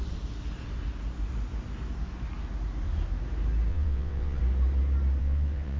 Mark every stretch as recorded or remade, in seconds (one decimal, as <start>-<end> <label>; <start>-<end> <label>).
0.0-3.7 recorded; 3.7-4.4 remade; 4.4-5.2 recorded; 5.2-5.8 remade